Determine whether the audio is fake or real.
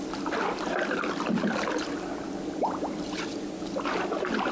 real